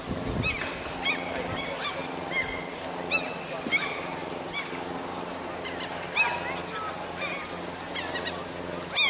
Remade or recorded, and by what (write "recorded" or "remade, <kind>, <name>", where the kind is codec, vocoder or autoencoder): recorded